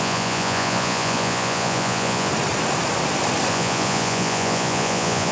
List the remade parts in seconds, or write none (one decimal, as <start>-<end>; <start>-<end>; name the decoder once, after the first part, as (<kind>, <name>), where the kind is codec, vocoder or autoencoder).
0.0-2.3 (vocoder, Vocos); 3.5-5.3